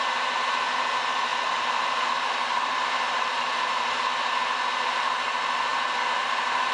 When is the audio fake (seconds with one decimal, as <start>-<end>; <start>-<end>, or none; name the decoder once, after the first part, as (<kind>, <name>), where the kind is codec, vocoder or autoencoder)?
0.0-6.7 (vocoder, BigVGAN v2)